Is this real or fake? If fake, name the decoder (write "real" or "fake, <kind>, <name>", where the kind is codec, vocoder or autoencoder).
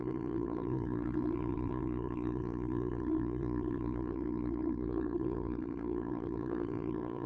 fake, codec, SNAC